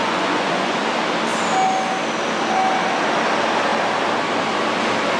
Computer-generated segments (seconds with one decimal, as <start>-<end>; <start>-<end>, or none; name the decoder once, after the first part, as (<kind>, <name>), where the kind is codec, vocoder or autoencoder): 0.0-0.8 (vocoder, Vocos)